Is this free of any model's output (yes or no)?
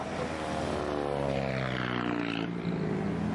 yes